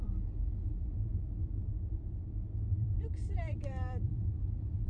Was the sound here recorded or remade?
remade